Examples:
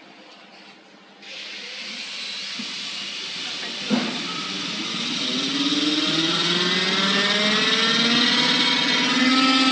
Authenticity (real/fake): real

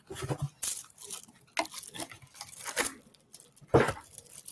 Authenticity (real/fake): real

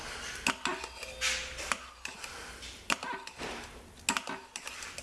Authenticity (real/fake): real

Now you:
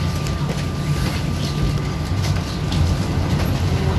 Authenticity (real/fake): real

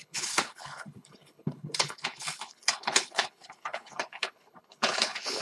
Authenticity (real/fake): fake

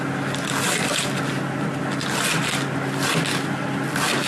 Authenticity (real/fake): real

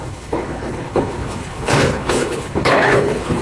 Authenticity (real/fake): fake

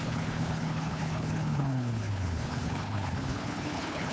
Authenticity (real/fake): fake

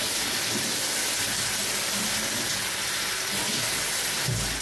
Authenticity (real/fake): real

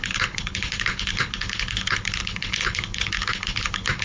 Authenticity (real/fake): fake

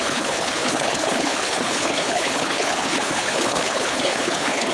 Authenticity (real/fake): fake